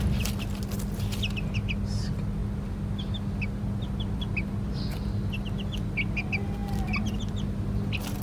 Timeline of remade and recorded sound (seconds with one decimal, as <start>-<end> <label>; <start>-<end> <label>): 0.0-8.2 recorded